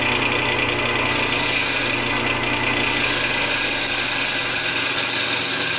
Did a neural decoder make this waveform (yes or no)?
no